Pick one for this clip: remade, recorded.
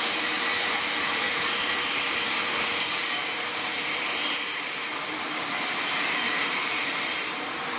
remade